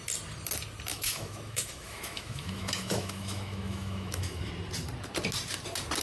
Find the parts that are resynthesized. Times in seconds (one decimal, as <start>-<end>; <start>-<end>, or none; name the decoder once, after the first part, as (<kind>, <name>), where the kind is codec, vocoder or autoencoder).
0.9-4.5 (autoencoder, DAC-VAE)